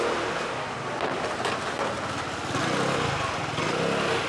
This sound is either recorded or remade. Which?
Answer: recorded